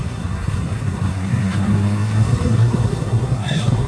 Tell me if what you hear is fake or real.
fake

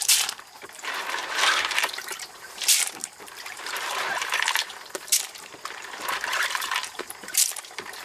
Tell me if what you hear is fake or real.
fake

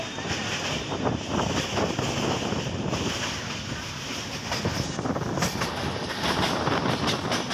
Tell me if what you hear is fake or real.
real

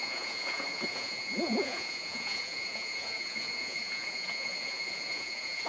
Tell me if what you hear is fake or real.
fake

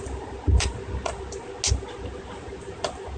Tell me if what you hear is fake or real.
real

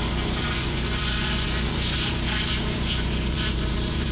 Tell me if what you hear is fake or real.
fake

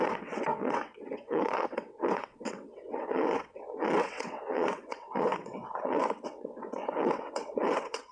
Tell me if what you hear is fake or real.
fake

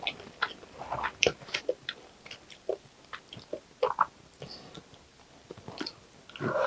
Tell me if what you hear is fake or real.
real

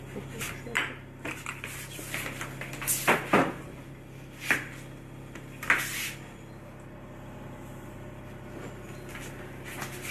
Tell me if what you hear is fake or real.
real